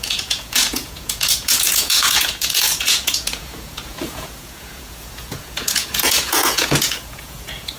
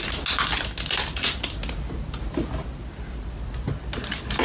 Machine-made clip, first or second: first